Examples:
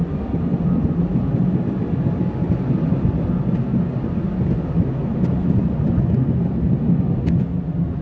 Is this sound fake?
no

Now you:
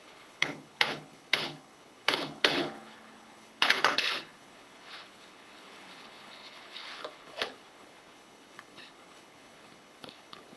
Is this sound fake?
yes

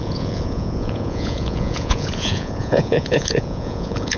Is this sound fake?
yes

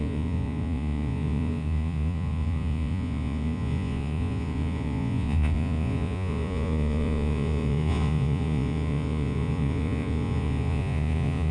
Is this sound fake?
yes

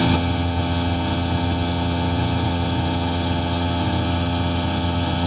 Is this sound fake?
yes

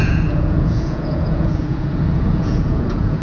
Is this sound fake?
yes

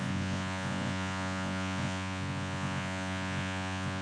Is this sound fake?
yes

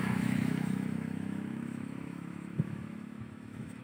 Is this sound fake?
yes